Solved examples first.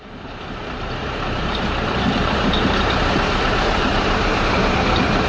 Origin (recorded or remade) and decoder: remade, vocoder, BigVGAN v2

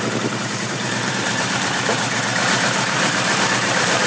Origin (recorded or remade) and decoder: remade, vocoder, BigVGAN v2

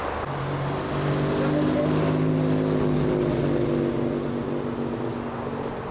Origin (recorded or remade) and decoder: recorded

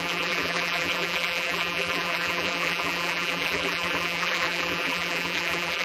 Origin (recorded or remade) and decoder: remade, vocoder, BigVGAN v2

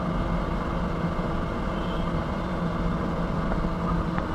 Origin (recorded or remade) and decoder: recorded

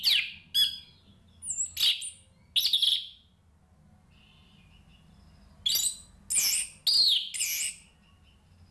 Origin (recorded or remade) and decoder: recorded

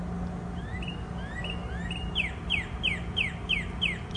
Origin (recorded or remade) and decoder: recorded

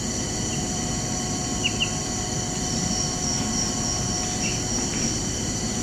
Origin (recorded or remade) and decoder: remade, vocoder, BigVGAN v2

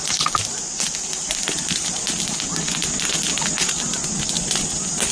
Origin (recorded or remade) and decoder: recorded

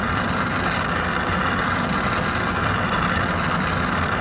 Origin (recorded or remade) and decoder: remade, vocoder, BigVGAN v2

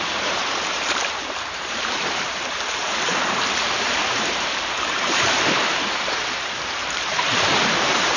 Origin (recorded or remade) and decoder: remade, vocoder, BigVGAN v2